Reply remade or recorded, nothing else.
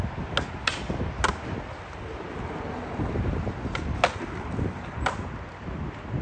recorded